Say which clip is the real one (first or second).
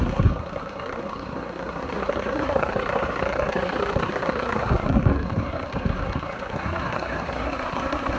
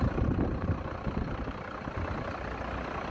second